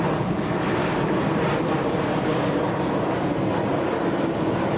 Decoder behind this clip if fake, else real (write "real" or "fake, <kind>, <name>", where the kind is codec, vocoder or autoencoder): real